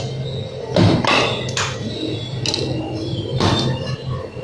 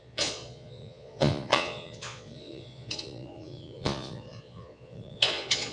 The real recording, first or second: first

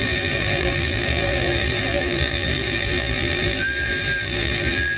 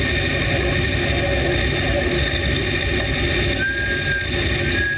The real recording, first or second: second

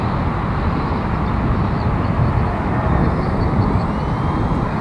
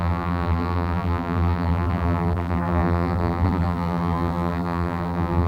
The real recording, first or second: first